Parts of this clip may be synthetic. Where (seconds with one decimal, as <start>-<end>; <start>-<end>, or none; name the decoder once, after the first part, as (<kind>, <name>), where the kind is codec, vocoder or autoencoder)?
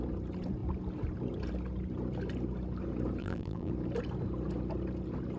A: 3.2-3.7 (vocoder, BigVGAN v2)